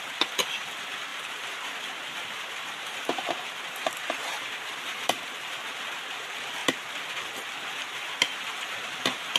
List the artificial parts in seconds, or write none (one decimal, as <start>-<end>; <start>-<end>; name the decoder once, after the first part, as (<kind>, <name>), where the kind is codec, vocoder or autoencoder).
1.1-5.3 (vocoder, BigVGAN v2)